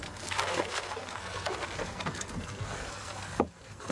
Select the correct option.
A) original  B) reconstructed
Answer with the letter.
B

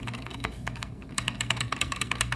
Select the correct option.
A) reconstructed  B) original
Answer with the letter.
A